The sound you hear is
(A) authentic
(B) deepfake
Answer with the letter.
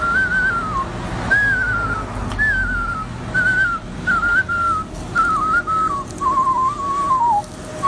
A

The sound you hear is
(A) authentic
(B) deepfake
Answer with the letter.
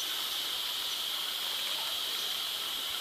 A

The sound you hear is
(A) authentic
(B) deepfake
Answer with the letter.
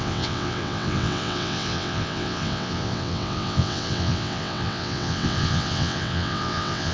B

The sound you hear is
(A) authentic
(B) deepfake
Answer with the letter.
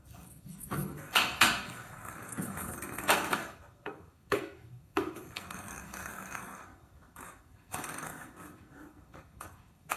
B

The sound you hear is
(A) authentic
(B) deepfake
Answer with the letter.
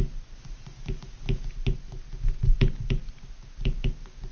A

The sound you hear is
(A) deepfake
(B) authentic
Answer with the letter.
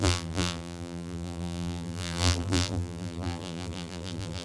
A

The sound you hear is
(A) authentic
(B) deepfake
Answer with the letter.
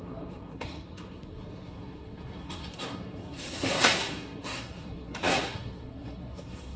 B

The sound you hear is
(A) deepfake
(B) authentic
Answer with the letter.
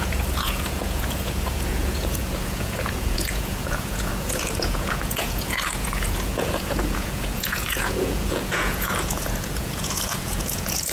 A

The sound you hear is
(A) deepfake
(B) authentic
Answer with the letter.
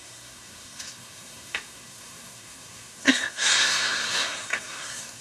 A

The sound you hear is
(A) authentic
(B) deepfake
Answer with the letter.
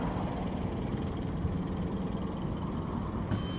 A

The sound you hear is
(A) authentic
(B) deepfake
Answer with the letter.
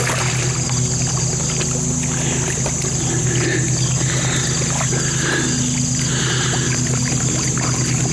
A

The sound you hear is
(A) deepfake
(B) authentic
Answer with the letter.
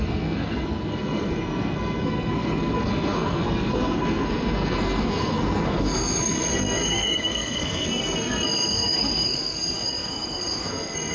A